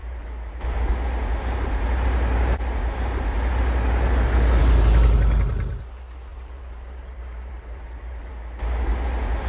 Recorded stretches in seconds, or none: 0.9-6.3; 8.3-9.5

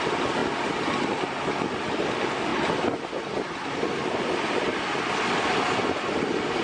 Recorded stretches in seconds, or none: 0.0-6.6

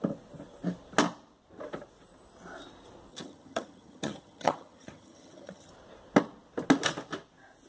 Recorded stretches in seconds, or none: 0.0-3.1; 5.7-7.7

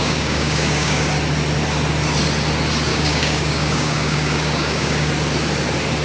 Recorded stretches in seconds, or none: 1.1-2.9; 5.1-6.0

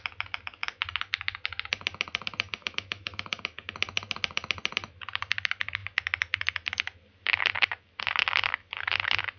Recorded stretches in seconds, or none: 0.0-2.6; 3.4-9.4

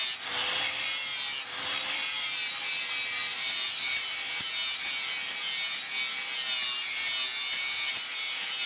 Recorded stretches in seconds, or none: 0.0-2.0; 2.8-3.2; 4.3-8.7

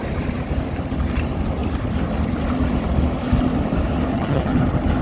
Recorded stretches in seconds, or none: 0.0-4.1; 4.6-5.0

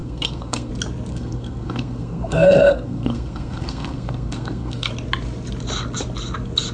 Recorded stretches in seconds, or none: 0.7-1.1; 4.9-6.7